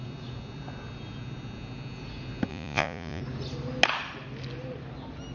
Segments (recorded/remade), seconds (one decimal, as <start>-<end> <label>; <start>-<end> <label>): 0.0-2.5 recorded; 2.5-3.2 remade; 3.2-5.3 recorded